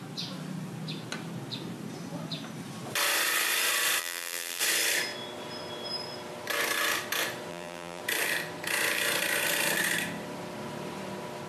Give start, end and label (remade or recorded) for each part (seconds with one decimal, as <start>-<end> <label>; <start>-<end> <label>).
0.0-4.0 recorded; 4.0-4.6 remade; 4.6-7.5 recorded; 7.5-8.0 remade; 8.0-11.5 recorded